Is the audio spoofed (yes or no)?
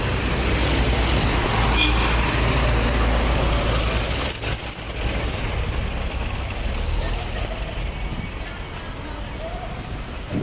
no